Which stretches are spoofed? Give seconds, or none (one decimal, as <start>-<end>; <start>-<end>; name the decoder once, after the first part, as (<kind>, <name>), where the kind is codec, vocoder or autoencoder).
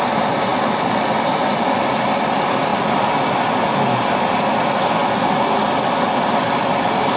none